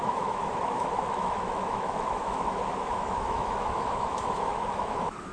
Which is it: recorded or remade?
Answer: remade